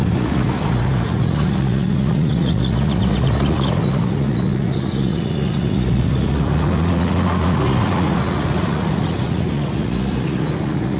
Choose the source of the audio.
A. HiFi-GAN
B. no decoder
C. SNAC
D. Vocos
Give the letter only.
D